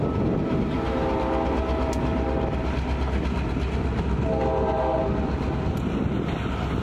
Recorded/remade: recorded